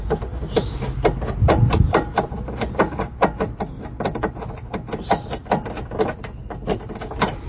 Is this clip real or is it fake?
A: real